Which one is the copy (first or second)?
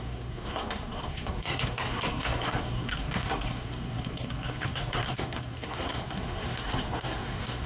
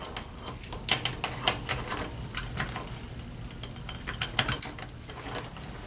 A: first